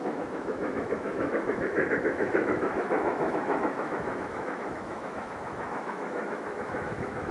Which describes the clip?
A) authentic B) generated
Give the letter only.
B